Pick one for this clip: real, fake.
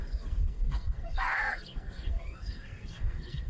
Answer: fake